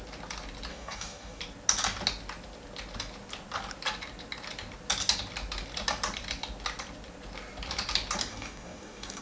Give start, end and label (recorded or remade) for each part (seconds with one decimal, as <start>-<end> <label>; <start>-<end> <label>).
0.0-0.7 recorded; 0.7-1.4 remade; 1.4-8.3 recorded; 8.3-9.2 remade